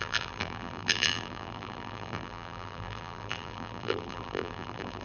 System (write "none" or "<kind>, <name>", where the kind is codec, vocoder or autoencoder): vocoder, BigVGAN v2